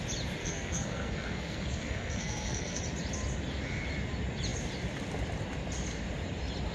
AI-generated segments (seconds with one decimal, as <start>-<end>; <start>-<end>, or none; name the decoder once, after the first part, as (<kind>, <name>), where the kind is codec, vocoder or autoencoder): 0.4-2.8 (codec, SNAC)